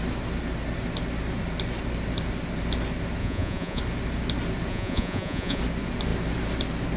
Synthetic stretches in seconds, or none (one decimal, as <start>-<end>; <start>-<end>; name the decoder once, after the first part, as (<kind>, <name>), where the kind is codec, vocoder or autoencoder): 3.2-3.8 (vocoder, Vocos); 4.7-5.6